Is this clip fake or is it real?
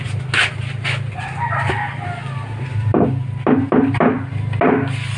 real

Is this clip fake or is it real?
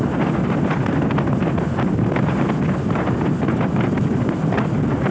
real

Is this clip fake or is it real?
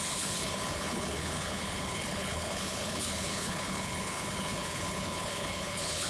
fake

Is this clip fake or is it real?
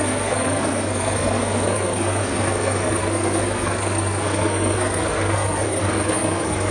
fake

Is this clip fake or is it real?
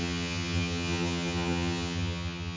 fake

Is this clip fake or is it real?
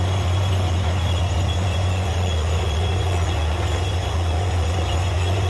fake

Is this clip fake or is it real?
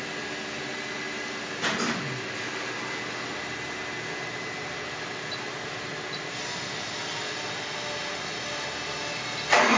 real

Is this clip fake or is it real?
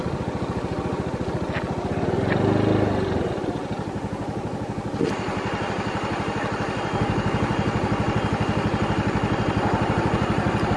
real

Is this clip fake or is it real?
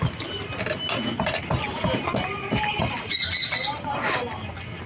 real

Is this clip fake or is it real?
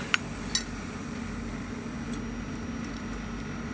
real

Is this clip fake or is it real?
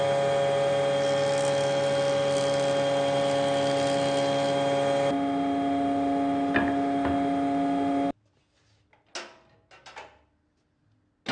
real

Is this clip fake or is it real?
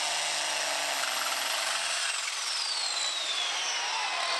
real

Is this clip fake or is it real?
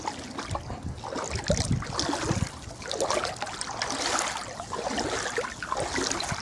real